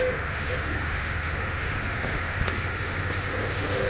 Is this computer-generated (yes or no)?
yes